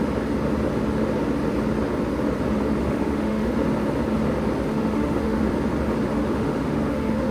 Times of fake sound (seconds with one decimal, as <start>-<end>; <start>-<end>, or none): 2.8-3.5; 4.7-5.4; 6.2-7.3